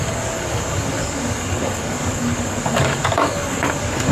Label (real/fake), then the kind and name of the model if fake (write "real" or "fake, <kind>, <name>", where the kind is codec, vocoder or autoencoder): fake, codec, DAC